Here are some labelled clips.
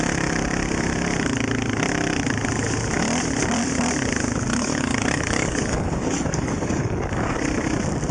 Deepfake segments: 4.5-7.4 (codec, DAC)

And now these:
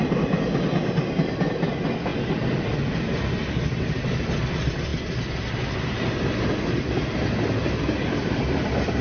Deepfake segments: none